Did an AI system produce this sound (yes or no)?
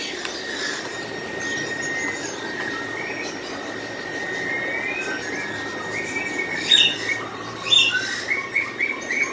no